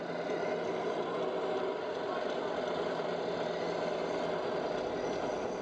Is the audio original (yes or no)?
yes